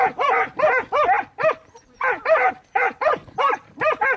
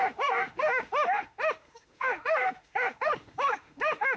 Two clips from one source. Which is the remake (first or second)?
second